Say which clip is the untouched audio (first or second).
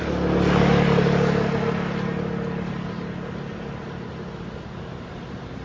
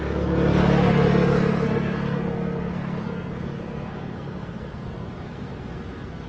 first